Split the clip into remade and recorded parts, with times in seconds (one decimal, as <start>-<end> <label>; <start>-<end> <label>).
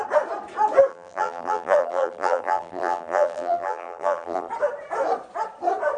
0.0-0.9 recorded; 0.9-4.5 remade; 4.5-6.0 recorded